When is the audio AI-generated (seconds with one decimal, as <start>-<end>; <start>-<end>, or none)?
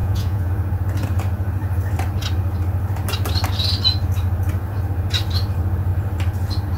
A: 0.0-0.5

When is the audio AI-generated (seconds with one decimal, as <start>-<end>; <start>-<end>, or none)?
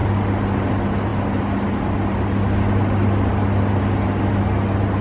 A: none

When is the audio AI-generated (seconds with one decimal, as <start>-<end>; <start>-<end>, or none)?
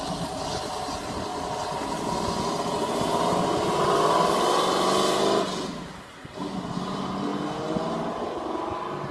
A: none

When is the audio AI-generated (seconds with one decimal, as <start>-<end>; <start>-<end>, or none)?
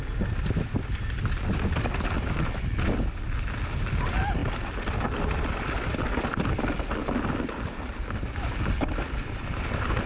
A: none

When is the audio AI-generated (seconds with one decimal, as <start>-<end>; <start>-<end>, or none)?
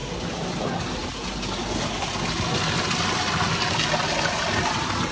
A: none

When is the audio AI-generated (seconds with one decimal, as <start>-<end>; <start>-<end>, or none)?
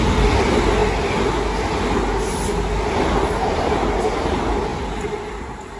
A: none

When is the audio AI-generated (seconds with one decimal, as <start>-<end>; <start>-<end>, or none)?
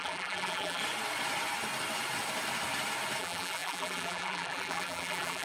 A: 0.0-0.8; 3.2-5.4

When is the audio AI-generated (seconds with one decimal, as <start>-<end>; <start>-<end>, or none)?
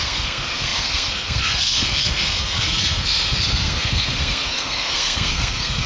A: 0.0-5.9